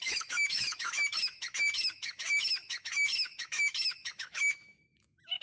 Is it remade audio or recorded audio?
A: remade